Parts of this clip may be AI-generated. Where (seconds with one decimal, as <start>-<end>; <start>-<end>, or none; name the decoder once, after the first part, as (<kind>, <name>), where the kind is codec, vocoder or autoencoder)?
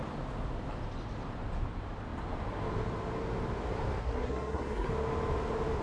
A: 4.0-4.9 (codec, SNAC)